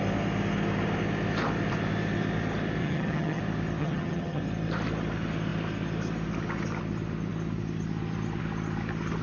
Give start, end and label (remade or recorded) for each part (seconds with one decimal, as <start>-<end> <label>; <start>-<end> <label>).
0.0-2.8 recorded; 2.8-3.4 remade; 3.4-3.8 recorded; 3.8-4.4 remade; 4.4-9.2 recorded